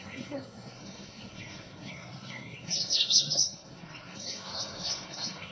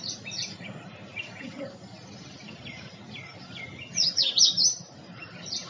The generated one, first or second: first